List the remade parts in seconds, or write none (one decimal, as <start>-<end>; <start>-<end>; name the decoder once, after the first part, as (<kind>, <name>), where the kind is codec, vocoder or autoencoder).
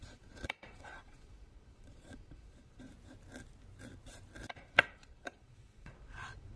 0.0-2.9 (vocoder, Vocos); 4.5-6.6